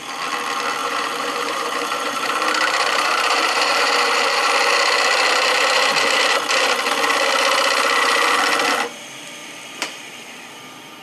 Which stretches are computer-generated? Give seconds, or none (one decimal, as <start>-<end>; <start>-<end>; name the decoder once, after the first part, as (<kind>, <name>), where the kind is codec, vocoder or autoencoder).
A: 0.8-4.5 (vocoder, BigVGAN v2); 9.4-10.5